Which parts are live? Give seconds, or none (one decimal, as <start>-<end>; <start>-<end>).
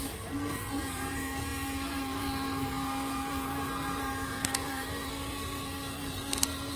none